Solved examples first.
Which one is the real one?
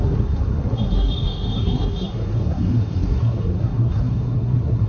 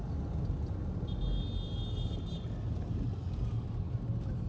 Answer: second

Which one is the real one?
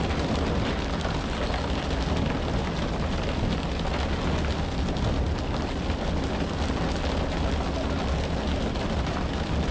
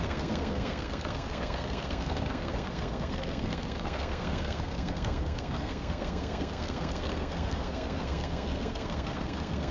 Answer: first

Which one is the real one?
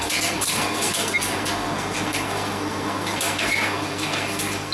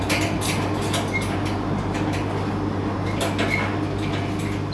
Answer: second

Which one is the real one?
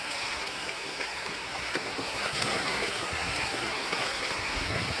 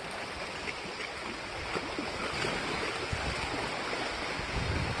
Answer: second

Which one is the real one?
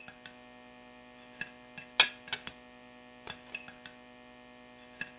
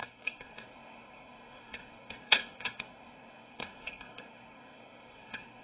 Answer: first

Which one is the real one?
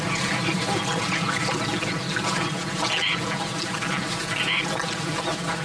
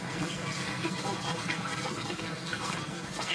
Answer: first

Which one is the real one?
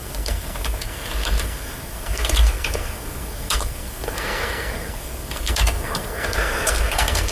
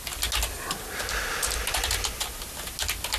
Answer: second